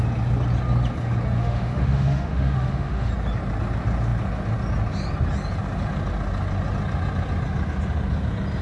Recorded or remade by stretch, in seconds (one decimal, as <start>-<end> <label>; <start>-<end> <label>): 0.0-1.4 recorded; 1.4-3.1 remade; 3.1-8.6 recorded